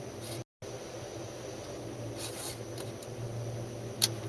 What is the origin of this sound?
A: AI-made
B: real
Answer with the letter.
B